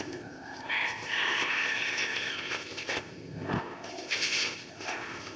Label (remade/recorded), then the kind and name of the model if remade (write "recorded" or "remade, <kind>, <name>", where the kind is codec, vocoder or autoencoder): remade, codec, ZipCodec